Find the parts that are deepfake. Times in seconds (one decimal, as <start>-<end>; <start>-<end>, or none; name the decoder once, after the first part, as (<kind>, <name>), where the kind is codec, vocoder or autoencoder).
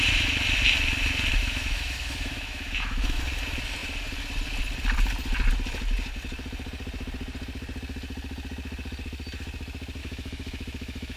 1.3-3.2 (autoencoder, DAC-VAE); 10.0-11.2